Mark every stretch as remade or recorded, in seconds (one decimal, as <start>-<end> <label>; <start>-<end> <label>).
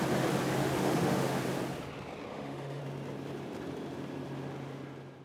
0.0-0.6 recorded; 0.6-1.4 remade; 1.4-2.3 recorded; 2.3-2.8 remade; 2.8-5.2 recorded